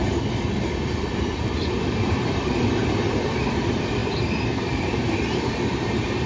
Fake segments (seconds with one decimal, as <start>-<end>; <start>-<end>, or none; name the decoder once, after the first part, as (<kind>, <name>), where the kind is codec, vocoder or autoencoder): 0.0-6.3 (vocoder, BigVGAN v2)

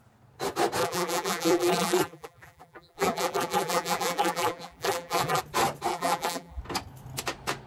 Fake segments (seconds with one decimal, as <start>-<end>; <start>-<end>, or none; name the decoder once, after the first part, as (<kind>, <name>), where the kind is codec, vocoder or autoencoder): 0.8-5.4 (vocoder, BigVGAN v2); 5.9-6.6

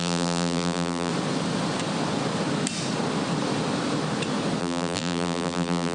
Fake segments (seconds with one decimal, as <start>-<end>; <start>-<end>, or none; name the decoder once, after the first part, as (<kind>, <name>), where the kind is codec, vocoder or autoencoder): 0.0-1.1 (vocoder, BigVGAN v2); 4.6-5.9

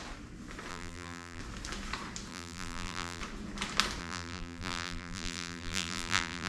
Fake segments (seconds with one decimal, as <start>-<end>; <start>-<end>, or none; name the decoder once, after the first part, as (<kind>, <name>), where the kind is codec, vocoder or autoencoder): 0.7-1.4 (vocoder, BigVGAN v2); 2.3-3.2; 4.0-6.5

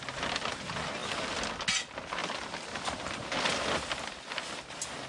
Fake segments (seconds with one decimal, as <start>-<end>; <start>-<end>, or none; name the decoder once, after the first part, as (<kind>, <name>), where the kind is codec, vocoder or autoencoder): 2.2-4.3 (vocoder, BigVGAN v2)

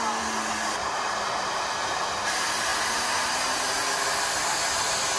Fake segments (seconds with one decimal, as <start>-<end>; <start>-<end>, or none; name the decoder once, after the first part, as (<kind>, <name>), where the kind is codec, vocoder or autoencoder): 0.8-2.1 (vocoder, BigVGAN v2)